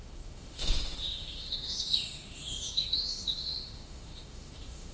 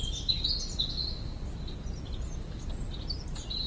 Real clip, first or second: second